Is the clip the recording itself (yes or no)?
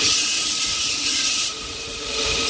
no